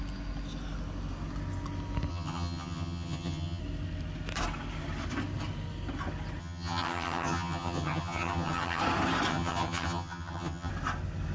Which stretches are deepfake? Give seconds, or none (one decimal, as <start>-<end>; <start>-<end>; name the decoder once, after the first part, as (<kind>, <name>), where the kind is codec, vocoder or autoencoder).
2.1-3.6 (vocoder, HiFi-GAN); 6.4-8.8; 9.3-10.7